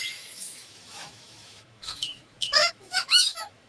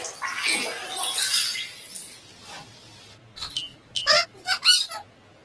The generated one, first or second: first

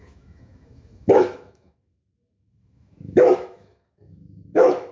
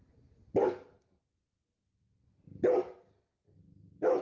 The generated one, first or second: first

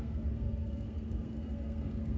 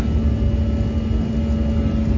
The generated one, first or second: first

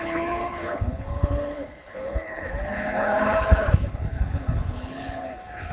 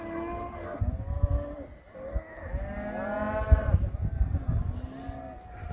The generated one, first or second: first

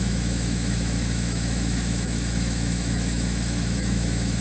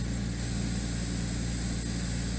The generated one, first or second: first